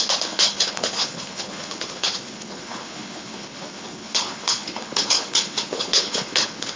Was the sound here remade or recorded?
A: remade